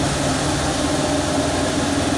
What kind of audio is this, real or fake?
real